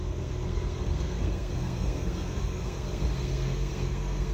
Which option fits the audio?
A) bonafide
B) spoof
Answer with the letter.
B